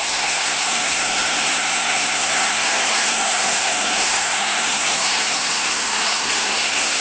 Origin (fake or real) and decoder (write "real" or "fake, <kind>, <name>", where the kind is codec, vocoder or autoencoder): fake, codec, SNAC